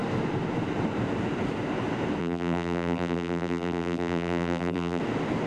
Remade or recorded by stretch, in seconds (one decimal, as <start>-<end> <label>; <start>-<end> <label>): 0.0-2.2 recorded; 2.2-5.0 remade; 5.0-5.5 recorded